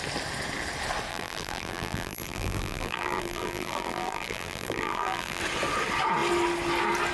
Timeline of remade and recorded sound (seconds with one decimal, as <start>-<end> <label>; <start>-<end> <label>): 0.0-1.1 recorded; 1.1-5.4 remade; 5.4-7.1 recorded